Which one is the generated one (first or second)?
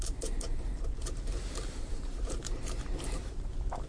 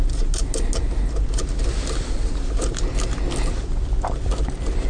first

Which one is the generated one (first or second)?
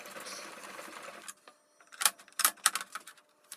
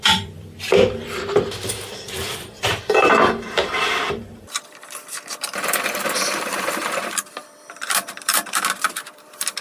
second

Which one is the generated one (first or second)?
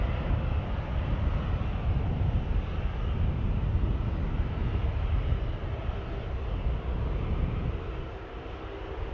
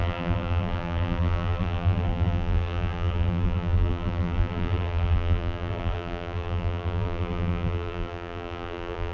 second